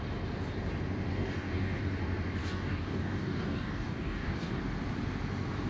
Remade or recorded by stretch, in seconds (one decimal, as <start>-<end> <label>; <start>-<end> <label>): 0.0-1.1 recorded; 1.1-1.8 remade; 1.8-2.4 recorded; 2.4-4.6 remade; 4.6-5.7 recorded